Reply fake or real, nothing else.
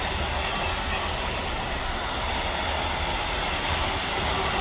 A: real